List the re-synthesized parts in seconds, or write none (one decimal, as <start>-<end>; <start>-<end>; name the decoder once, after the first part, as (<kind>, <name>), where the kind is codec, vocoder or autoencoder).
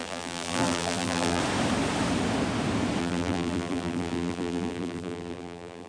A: 0.0-1.4 (vocoder, BigVGAN v2); 3.0-5.9